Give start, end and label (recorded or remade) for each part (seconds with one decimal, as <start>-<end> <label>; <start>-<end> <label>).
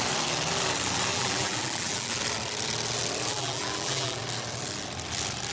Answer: 0.0-1.1 recorded; 1.1-2.2 remade; 2.2-3.3 recorded; 3.3-4.2 remade; 4.2-5.5 recorded